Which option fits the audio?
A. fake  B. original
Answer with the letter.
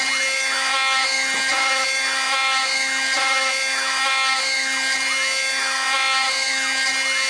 B